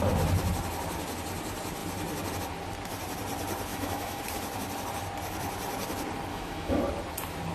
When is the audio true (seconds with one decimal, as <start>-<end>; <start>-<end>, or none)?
0.0-3.7; 4.2-6.3; 6.8-7.5